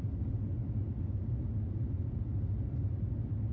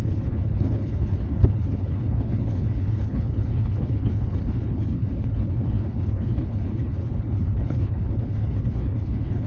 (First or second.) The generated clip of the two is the second